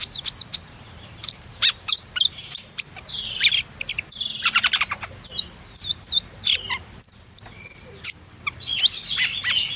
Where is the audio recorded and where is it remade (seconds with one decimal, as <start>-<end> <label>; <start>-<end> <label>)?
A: 0.0-0.5 recorded; 0.5-3.2 remade; 3.2-3.9 recorded; 3.9-7.5 remade; 7.5-9.8 recorded